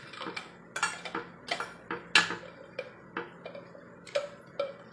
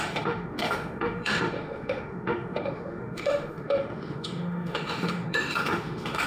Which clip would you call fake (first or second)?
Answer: second